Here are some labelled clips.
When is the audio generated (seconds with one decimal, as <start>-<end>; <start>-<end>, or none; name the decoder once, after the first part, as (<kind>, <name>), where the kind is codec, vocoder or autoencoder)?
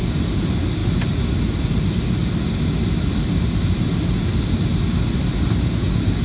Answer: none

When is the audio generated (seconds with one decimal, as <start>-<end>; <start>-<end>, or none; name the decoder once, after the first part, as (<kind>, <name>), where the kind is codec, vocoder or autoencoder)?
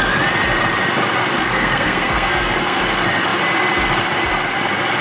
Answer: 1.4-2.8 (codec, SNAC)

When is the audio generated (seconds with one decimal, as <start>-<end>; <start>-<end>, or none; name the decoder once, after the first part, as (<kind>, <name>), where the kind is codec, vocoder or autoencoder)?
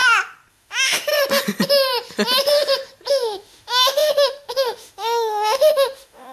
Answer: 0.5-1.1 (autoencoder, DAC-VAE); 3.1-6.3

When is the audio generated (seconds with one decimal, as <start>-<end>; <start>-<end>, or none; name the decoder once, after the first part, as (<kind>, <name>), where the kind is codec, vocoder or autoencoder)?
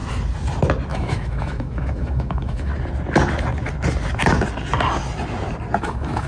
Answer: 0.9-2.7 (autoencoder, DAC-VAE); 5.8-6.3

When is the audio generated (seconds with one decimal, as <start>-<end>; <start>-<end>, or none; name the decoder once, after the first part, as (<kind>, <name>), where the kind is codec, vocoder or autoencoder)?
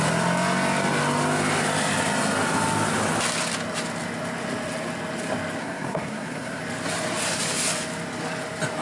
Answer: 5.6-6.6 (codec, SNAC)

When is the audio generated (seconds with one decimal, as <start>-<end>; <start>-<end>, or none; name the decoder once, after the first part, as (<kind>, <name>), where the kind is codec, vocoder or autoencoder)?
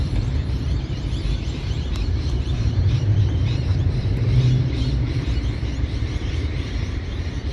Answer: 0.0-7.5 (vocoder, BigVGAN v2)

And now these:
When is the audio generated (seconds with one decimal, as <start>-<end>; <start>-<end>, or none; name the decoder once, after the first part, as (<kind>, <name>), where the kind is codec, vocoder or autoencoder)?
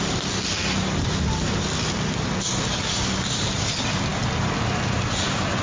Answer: none